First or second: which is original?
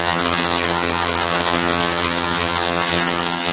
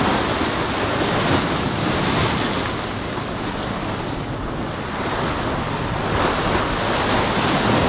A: second